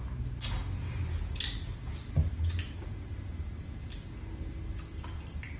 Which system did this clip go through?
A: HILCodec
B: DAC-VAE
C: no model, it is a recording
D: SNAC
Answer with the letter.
C